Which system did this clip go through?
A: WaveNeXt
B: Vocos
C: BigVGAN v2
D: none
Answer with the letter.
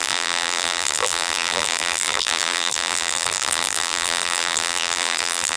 C